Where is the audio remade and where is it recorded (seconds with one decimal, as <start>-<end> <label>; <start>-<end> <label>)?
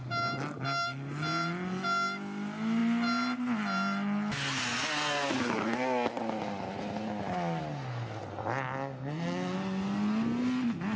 0.0-11.0 recorded